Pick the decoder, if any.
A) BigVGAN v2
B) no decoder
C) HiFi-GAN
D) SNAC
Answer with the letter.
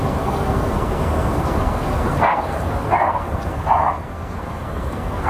D